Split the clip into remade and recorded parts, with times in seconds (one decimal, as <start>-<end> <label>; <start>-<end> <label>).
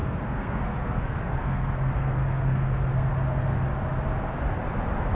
0.0-3.1 remade; 3.1-5.1 recorded